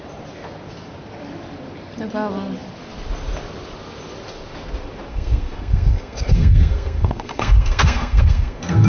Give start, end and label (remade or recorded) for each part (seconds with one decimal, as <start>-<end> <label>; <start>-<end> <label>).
0.0-5.1 recorded; 5.1-8.9 remade